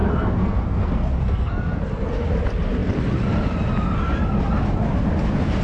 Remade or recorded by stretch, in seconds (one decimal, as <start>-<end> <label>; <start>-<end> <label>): 0.0-1.8 remade; 1.8-5.6 recorded